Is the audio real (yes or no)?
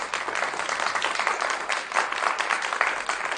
yes